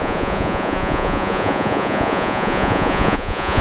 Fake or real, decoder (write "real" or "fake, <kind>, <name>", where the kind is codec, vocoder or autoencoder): fake, vocoder, Vocos